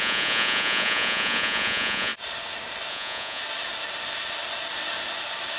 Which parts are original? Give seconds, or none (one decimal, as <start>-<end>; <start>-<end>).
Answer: 2.1-2.9; 3.4-5.6